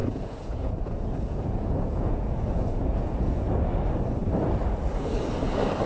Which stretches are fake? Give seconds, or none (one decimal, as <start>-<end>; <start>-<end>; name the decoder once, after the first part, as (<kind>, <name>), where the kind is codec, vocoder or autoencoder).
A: 0.0-3.5 (vocoder, Vocos)